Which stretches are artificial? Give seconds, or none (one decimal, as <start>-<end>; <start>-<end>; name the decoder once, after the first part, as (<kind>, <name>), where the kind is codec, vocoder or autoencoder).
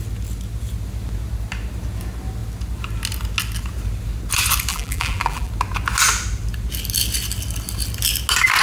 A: 4.7-5.5 (vocoder, BigVGAN v2)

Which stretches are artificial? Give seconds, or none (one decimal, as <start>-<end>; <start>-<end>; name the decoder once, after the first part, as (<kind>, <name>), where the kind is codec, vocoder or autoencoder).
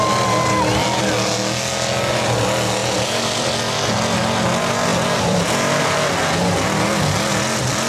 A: 2.8-3.5 (vocoder, BigVGAN v2); 4.9-5.8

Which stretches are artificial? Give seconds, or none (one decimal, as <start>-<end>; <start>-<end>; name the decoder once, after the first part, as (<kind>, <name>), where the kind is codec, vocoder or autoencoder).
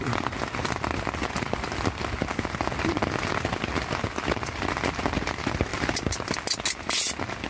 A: 5.7-6.3 (vocoder, BigVGAN v2)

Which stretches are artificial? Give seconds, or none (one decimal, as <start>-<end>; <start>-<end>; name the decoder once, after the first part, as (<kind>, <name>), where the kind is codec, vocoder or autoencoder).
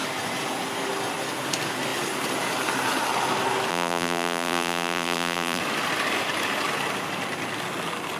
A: 3.7-5.6 (vocoder, BigVGAN v2)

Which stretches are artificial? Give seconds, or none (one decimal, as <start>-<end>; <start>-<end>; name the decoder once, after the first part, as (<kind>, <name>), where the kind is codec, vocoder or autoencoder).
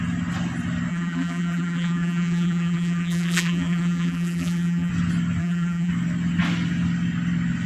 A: 0.9-4.9 (vocoder, BigVGAN v2); 5.4-5.9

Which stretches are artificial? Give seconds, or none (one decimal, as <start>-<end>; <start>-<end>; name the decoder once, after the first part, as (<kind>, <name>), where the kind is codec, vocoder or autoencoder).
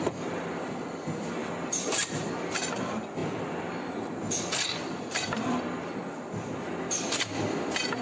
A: 1.4-1.9 (vocoder, BigVGAN v2)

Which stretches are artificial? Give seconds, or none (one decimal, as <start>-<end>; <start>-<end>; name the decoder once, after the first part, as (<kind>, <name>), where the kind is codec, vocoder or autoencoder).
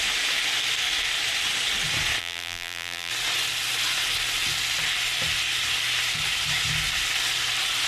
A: 2.2-3.1 (vocoder, BigVGAN v2)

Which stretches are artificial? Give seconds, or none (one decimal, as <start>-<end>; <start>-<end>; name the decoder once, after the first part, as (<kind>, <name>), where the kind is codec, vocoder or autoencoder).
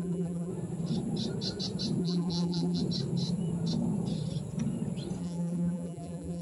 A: 0.0-0.5 (vocoder, BigVGAN v2); 2.0-2.8; 5.2-6.4